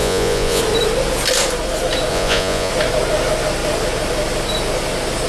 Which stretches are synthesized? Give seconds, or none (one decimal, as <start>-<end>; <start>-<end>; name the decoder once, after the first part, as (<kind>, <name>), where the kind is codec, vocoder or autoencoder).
0.0-0.6 (vocoder, Vocos); 2.1-2.7